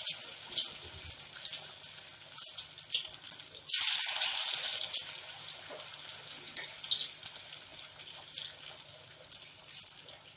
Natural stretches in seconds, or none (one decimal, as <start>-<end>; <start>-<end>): 0.0-10.4